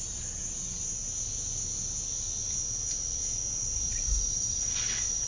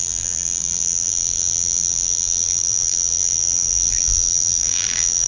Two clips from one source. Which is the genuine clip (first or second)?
first